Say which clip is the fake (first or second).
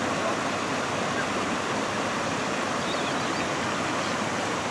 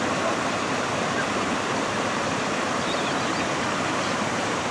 second